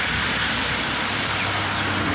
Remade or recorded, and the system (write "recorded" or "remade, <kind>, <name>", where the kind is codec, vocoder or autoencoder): recorded